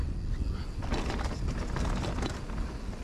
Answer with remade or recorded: recorded